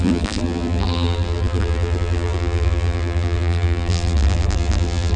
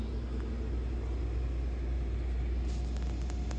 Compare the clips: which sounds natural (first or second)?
second